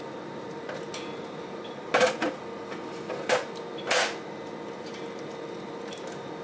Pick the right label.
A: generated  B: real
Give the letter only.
B